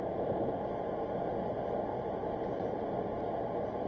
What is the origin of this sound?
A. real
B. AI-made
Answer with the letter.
A